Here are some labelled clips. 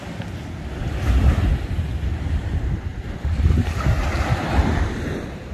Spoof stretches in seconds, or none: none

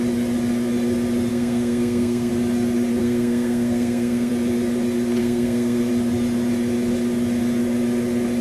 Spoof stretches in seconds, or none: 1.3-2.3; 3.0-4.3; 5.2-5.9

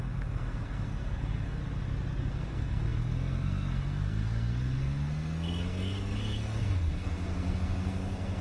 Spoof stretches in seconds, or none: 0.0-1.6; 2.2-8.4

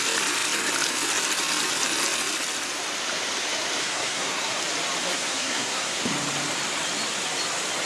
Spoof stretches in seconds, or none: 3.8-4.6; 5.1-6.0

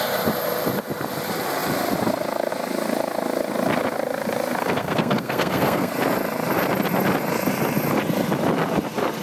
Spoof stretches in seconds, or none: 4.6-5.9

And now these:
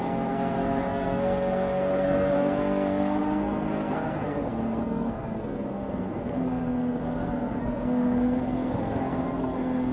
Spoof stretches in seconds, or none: 0.0-9.9

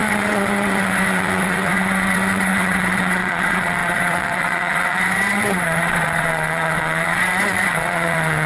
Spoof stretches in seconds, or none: 0.0-8.5